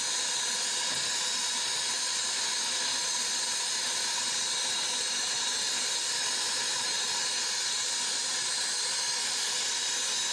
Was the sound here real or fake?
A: real